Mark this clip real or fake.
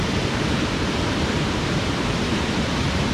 fake